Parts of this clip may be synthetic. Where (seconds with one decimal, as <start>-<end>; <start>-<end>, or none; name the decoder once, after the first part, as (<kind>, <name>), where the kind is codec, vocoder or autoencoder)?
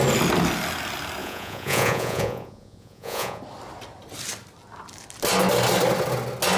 1.2-3.4 (vocoder, Vocos)